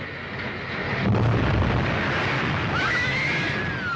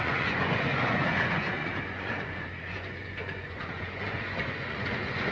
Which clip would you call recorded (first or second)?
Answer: first